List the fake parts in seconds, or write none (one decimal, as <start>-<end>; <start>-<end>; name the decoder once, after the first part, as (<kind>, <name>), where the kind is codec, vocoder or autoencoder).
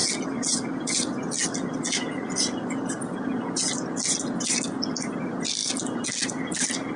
none